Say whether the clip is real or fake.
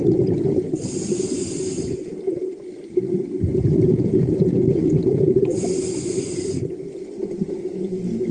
real